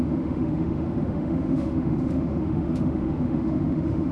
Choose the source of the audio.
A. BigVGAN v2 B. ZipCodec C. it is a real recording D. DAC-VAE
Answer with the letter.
D